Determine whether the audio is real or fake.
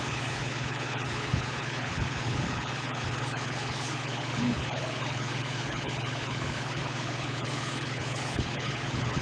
fake